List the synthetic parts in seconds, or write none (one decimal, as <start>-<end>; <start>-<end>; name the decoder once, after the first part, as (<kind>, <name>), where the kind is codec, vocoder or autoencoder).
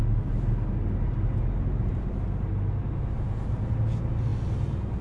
none